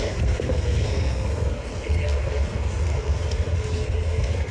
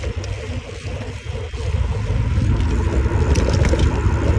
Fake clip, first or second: first